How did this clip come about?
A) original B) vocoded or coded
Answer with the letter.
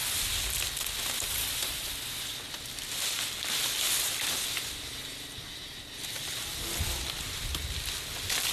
A